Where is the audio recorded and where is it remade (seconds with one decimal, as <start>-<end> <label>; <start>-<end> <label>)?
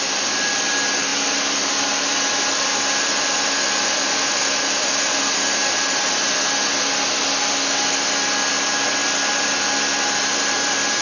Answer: 0.0-11.0 recorded